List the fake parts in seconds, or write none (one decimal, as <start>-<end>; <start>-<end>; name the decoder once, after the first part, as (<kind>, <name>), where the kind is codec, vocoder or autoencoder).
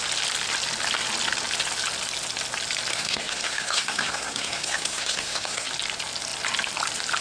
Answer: 2.9-5.7 (codec, SNAC)